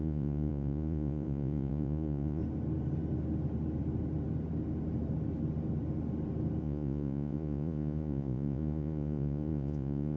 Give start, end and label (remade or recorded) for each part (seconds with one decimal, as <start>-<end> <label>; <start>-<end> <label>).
0.0-2.4 remade; 2.4-6.6 recorded; 6.6-10.2 remade